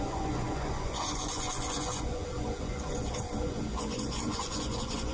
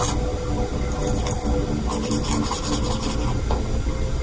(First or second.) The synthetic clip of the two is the first